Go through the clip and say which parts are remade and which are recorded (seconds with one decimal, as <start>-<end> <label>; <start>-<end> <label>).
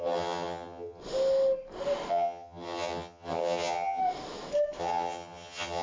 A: 0.0-1.0 remade; 1.0-2.1 recorded; 2.1-4.0 remade; 4.0-4.8 recorded; 4.8-5.8 remade